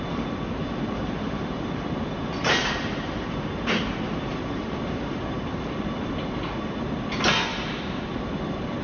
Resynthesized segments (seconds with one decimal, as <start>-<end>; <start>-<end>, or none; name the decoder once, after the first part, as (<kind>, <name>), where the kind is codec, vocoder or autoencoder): 0.6-5.4 (vocoder, BigVGAN v2); 7.5-8.3